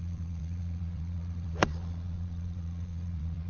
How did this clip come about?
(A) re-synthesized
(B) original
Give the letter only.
A